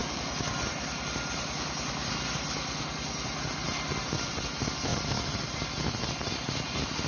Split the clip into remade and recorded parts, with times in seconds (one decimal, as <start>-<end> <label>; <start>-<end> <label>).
0.0-7.1 recorded